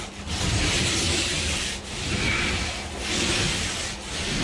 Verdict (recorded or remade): recorded